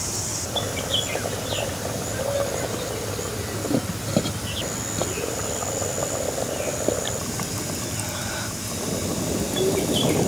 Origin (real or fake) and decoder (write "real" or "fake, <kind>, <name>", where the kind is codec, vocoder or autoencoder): real